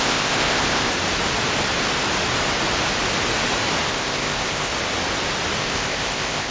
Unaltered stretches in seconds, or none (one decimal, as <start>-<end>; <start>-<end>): 0.9-3.9; 4.7-5.6